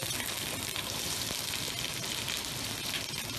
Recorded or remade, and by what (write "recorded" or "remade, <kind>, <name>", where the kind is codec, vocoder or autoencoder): recorded